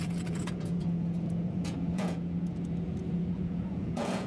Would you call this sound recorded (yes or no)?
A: no